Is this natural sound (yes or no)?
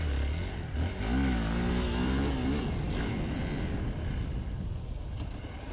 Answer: yes